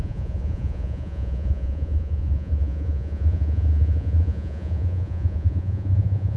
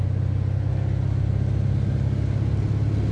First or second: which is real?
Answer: second